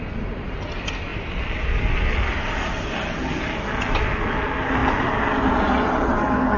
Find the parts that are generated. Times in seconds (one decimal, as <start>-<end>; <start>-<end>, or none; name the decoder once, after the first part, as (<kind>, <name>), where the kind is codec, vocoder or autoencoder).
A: none

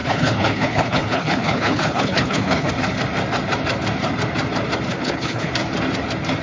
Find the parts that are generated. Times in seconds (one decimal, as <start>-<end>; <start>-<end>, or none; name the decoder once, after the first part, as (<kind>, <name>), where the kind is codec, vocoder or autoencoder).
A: 0.0-2.7 (codec, HILCodec); 4.9-5.5